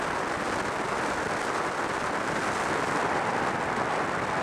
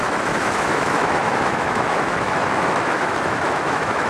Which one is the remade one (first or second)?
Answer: second